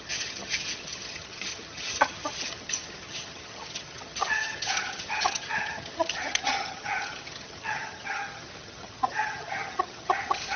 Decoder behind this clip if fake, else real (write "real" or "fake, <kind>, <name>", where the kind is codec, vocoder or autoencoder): fake, vocoder, HiFi-GAN